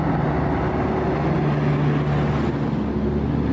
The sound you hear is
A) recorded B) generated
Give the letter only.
A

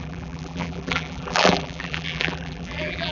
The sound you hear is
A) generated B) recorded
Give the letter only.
A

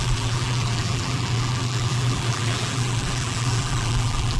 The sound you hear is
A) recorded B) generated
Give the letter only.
B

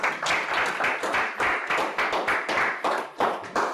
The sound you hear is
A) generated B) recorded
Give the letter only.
B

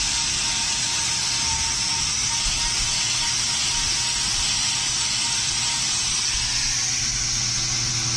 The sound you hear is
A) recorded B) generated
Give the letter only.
A